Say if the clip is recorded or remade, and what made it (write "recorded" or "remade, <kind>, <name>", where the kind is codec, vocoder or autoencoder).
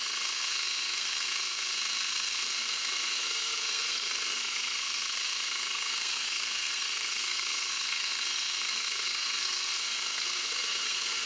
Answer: remade, codec, SNAC